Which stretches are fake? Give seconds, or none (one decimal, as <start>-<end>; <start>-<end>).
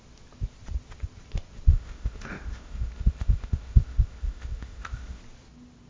1.7-5.2